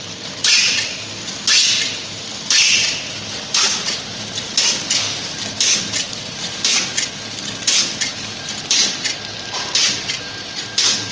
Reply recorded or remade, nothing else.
recorded